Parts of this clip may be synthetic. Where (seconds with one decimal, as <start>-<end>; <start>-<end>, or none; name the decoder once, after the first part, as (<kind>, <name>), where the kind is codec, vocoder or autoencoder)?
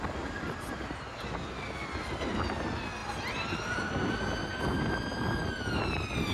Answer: none